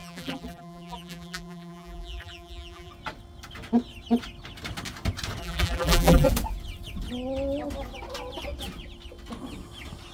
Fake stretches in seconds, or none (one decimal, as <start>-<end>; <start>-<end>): 0.0-2.9; 5.4-6.3